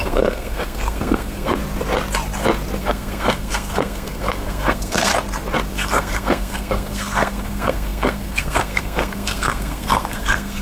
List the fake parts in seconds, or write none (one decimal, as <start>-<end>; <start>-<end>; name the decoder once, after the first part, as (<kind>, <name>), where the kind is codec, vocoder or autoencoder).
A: 0.0-1.6 (codec, SNAC); 2.8-5.1; 5.7-10.6